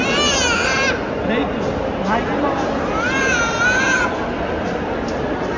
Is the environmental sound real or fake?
real